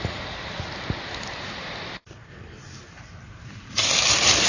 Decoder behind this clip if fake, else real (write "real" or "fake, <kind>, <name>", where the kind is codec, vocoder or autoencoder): real